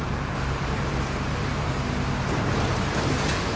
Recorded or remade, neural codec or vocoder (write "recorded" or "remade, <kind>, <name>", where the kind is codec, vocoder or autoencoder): remade, vocoder, BigVGAN v2